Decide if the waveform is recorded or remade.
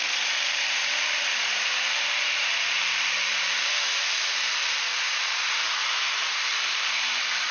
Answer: remade